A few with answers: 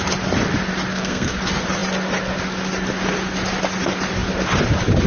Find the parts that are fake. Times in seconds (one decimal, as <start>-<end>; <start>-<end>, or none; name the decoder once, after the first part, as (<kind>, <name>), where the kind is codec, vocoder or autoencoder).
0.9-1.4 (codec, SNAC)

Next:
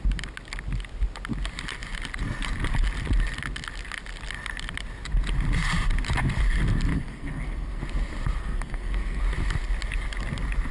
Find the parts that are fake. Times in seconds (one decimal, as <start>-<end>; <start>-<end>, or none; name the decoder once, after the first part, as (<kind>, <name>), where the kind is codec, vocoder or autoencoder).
6.9-7.8 (codec, SNAC); 8.4-9.2

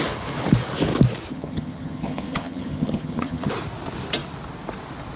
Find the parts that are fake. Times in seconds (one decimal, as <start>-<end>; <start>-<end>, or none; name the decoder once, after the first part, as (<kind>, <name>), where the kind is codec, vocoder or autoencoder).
1.3-3.5 (vocoder, HiFi-GAN)